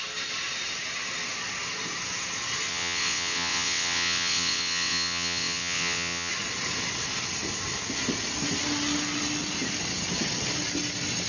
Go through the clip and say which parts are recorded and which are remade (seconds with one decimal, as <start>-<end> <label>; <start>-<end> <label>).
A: 0.0-2.7 recorded; 2.7-6.3 remade; 6.3-11.3 recorded

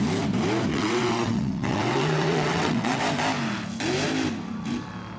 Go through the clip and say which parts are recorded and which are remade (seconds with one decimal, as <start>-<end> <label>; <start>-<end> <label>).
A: 0.0-0.7 recorded; 0.7-3.0 remade; 3.0-5.2 recorded

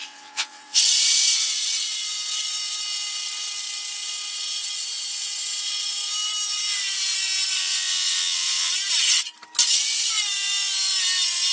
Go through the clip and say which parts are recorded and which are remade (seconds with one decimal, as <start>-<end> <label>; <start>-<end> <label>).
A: 0.0-0.8 remade; 0.8-7.6 recorded; 7.6-8.7 remade; 8.7-11.5 recorded

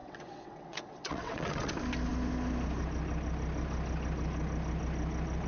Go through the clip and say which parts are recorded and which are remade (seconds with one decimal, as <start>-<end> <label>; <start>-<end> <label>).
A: 0.0-1.7 remade; 1.7-5.5 recorded

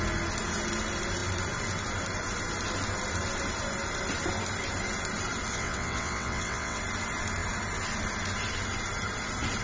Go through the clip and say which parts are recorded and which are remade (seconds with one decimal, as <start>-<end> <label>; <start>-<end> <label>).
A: 0.0-5.5 recorded; 5.5-6.8 remade; 6.8-9.6 recorded

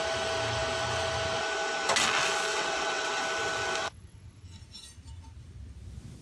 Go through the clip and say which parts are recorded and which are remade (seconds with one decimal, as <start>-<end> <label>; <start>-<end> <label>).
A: 0.0-2.5 recorded; 2.5-3.2 remade; 3.2-3.8 recorded; 3.8-4.6 remade; 4.6-6.2 recorded

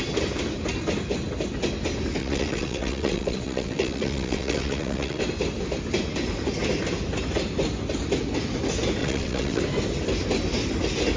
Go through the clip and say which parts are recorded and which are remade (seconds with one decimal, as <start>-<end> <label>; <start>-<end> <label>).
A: 0.0-2.2 recorded; 2.2-5.2 remade; 5.2-9.0 recorded; 9.0-9.6 remade; 9.6-11.2 recorded

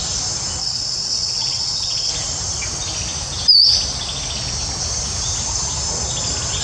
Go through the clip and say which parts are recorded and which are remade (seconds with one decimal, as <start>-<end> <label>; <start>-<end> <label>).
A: 0.0-0.6 recorded; 0.6-2.1 remade; 2.1-6.6 recorded